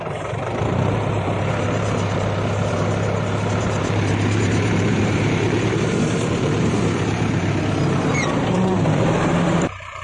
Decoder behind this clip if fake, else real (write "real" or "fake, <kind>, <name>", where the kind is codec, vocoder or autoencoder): fake, vocoder, BigVGAN v2